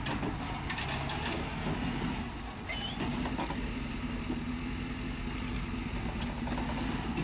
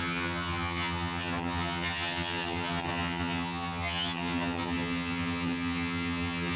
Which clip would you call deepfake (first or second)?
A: second